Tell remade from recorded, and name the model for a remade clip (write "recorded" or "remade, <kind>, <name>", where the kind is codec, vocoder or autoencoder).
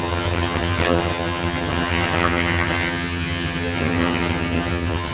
remade, vocoder, HiFi-GAN